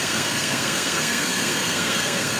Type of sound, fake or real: fake